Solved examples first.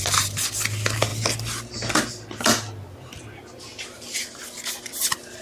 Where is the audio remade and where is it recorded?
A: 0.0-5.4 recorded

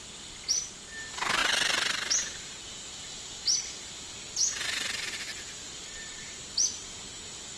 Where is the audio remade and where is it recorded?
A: 0.0-5.3 recorded; 5.3-6.4 remade; 6.4-7.6 recorded

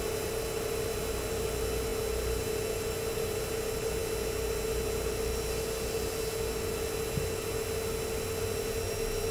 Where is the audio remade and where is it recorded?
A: 0.0-9.3 recorded

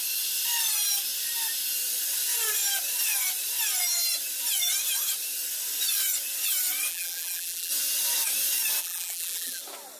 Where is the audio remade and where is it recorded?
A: 0.0-6.9 recorded; 6.9-7.7 remade; 7.7-8.8 recorded; 8.8-9.6 remade; 9.6-10.0 recorded